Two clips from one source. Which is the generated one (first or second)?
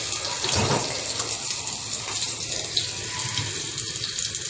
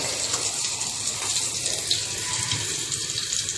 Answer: second